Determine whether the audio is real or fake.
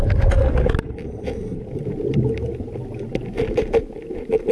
real